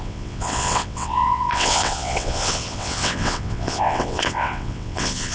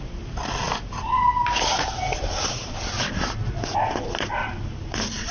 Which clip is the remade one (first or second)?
first